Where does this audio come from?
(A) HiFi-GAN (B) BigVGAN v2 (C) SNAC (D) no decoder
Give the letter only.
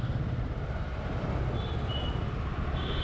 D